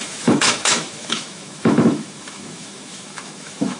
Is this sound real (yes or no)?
no